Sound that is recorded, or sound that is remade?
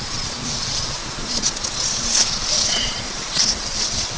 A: remade